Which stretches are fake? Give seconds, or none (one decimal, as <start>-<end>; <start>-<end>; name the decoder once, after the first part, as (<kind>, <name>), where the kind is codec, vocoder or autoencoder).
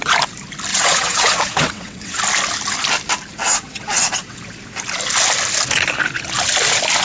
0.7-2.2 (vocoder, WaveNeXt); 3.4-4.4